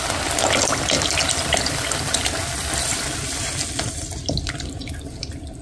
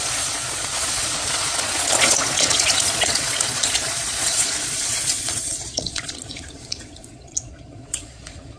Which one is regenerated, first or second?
second